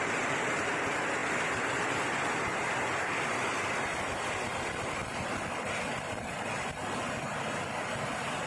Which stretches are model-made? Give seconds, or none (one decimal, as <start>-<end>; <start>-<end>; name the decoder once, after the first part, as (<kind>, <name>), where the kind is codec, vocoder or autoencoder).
1.2-3.7 (vocoder, BigVGAN v2); 5.0-7.2